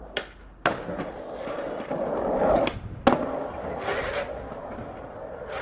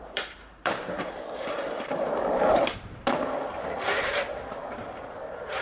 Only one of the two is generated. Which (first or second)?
second